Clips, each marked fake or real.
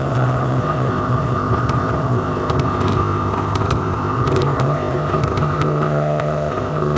fake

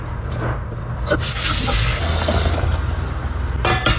real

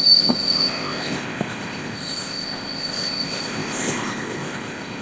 fake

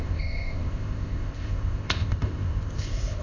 fake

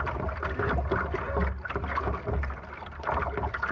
real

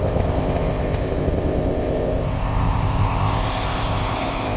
fake